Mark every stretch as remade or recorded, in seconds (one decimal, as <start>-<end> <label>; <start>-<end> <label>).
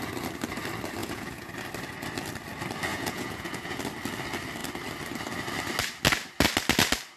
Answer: 0.0-1.0 recorded; 1.0-1.5 remade; 1.5-2.9 recorded; 2.9-3.8 remade; 3.8-7.2 recorded